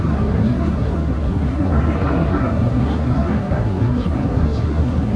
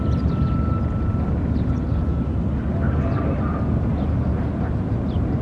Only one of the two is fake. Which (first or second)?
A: first